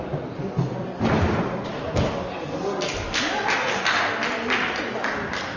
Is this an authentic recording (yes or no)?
yes